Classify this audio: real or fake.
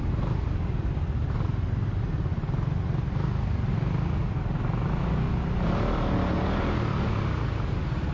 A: real